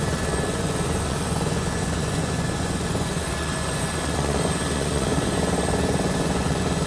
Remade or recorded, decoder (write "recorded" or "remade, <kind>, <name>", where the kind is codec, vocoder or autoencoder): remade, vocoder, Vocos